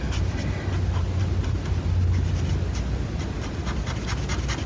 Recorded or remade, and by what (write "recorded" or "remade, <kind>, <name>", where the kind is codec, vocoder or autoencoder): recorded